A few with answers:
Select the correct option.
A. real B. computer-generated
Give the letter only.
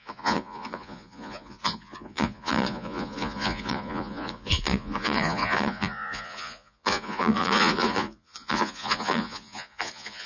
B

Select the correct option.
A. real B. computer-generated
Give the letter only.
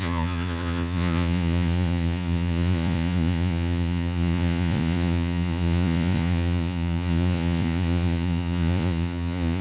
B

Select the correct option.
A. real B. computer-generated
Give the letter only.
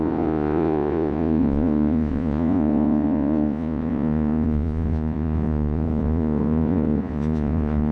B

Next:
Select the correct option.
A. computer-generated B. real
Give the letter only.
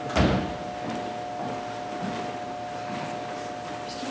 B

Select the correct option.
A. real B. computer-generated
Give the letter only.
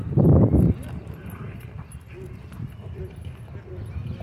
A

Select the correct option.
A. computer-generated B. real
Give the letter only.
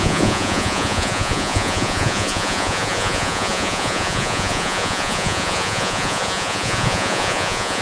A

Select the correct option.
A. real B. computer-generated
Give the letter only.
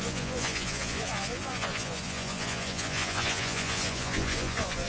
B